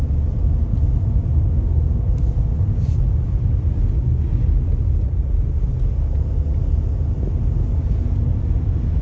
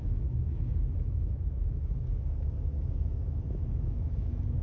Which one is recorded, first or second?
first